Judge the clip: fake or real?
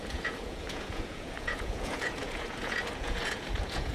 fake